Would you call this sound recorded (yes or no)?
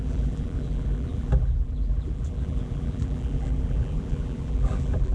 no